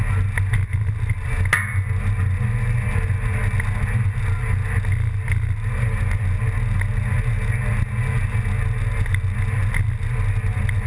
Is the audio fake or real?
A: real